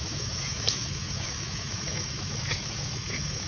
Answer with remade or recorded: remade